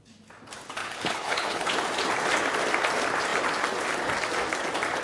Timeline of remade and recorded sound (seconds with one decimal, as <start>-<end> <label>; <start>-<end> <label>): 0.0-0.8 recorded; 0.8-1.7 remade; 1.7-5.0 recorded